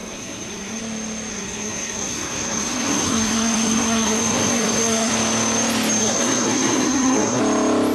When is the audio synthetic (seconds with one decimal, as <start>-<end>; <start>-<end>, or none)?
0.0-0.8; 1.3-5.1; 6.0-7.4